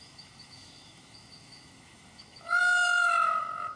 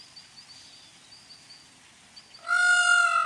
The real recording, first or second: second